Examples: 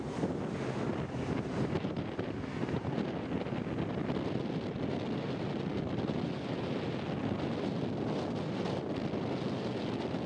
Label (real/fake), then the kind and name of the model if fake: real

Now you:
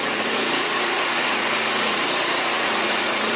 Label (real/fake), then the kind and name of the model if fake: fake, vocoder, Vocos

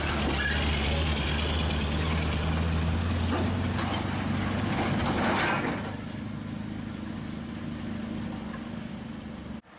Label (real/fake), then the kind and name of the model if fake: real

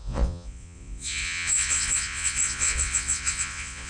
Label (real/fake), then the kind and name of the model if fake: fake, vocoder, Vocos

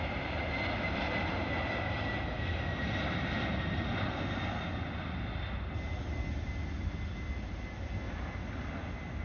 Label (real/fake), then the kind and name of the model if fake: real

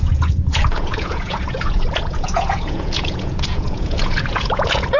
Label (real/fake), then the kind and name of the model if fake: fake, vocoder, Vocos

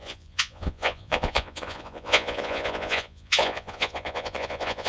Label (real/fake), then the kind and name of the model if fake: fake, vocoder, Vocos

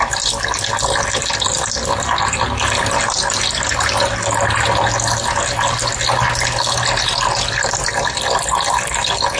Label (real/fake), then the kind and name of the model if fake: real